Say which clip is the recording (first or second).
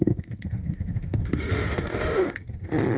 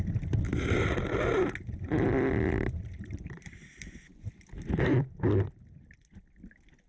second